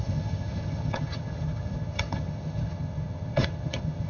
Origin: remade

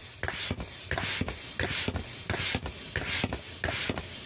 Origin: recorded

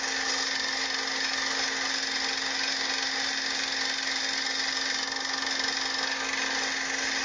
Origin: recorded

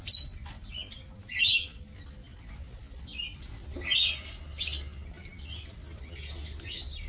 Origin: recorded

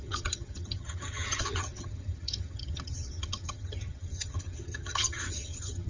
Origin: remade